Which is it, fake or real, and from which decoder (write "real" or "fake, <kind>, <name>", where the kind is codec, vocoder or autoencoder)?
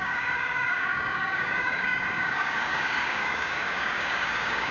fake, codec, DAC